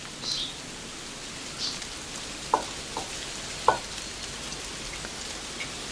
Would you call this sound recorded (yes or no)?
yes